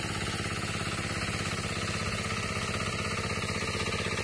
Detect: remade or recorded recorded